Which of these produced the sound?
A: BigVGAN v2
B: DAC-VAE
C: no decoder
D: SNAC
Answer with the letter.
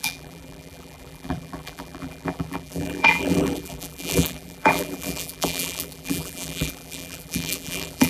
A